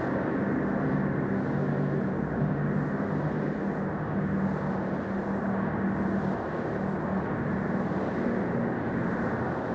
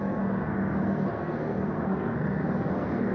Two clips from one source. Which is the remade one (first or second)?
second